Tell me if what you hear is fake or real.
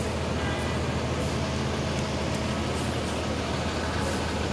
real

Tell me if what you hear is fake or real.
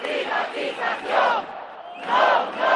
real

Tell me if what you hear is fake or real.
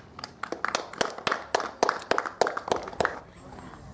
real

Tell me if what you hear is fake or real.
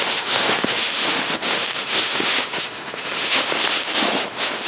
fake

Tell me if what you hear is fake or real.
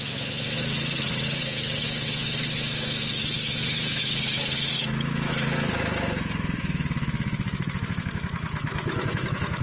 fake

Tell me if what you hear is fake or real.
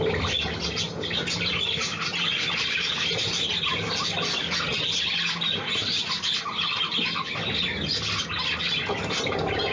real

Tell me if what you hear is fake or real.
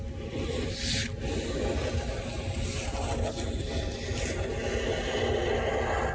real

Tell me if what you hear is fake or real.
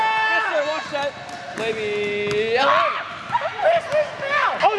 real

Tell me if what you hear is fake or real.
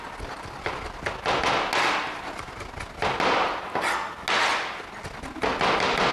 real